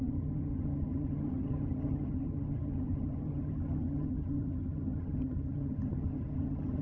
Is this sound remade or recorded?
remade